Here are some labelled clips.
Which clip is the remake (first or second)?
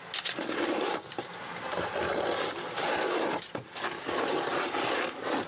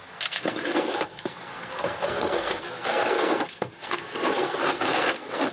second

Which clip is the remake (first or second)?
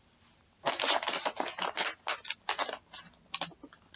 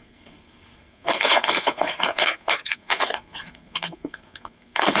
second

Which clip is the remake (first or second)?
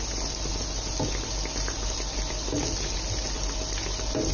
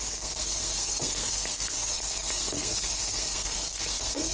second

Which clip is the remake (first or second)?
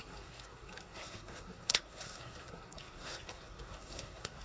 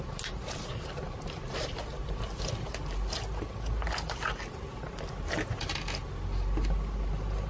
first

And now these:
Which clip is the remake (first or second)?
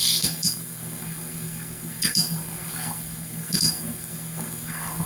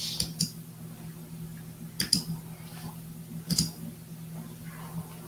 first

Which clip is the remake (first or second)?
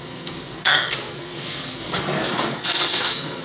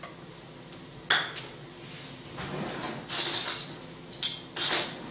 first